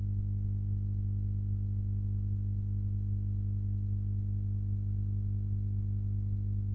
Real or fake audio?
real